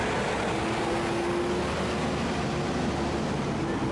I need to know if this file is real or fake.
real